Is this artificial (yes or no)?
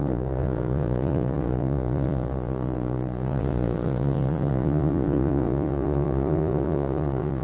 yes